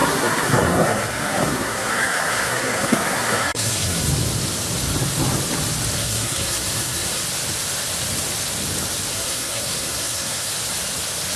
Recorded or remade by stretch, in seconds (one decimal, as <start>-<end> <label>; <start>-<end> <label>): 0.0-4.1 remade; 4.1-6.0 recorded; 6.0-7.2 remade; 7.2-9.1 recorded; 9.1-10.5 remade; 10.5-11.4 recorded